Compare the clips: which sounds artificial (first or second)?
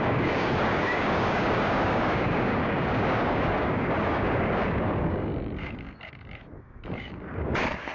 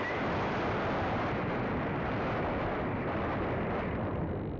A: first